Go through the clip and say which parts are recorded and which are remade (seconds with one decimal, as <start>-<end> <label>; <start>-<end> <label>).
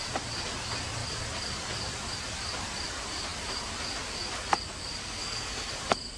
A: 0.0-5.0 recorded; 5.0-5.7 remade; 5.7-6.2 recorded